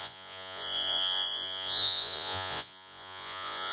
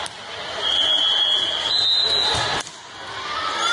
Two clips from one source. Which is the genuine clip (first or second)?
second